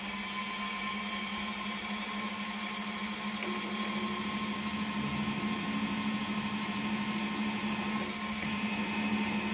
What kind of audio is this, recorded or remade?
recorded